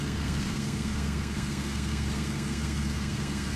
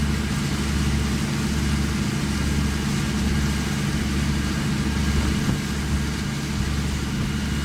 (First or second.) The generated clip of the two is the first